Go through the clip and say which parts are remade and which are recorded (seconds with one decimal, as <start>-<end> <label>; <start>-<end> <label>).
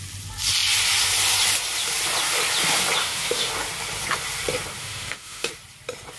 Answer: 0.0-3.0 recorded; 3.0-3.5 remade; 3.5-4.8 recorded; 4.8-5.5 remade; 5.5-6.2 recorded